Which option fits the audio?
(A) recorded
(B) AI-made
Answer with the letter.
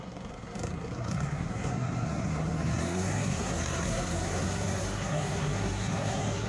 B